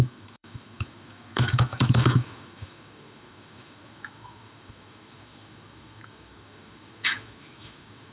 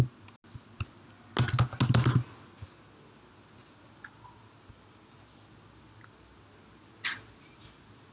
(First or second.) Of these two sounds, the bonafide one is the second